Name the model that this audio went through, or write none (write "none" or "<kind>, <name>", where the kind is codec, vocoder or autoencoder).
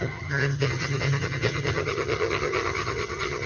vocoder, HiFi-GAN